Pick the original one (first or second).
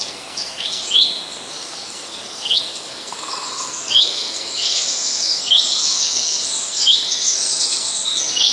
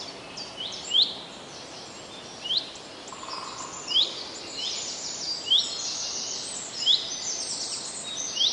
second